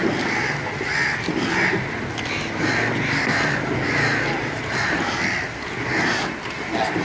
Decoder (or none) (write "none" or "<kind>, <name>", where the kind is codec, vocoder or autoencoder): none